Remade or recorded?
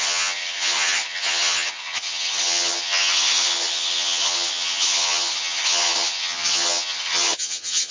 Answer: remade